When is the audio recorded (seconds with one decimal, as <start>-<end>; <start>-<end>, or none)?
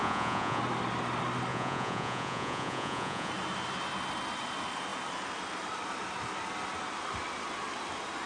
0.6-1.5; 3.3-8.3